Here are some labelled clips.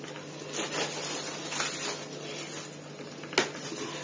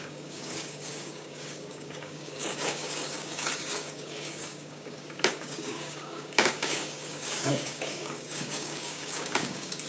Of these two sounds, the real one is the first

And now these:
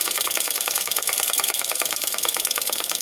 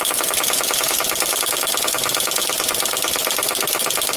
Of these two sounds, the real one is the second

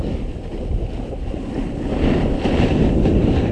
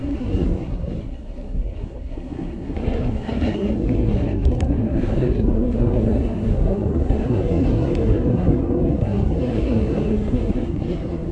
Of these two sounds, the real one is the first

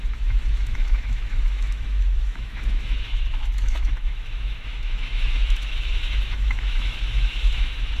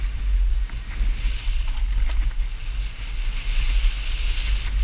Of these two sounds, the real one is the second